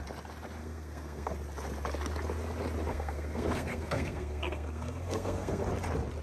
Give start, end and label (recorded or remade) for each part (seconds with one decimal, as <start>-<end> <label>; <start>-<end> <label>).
0.0-0.6 recorded; 0.6-1.3 remade; 1.3-2.9 recorded; 2.9-5.6 remade; 5.6-6.2 recorded